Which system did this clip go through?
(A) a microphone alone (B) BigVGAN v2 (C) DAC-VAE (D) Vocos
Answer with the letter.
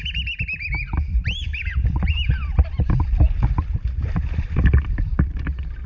A